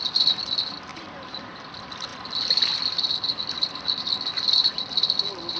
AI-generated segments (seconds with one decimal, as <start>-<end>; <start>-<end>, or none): 0.9-1.6